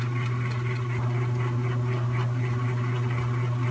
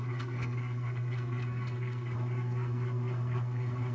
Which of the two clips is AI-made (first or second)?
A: second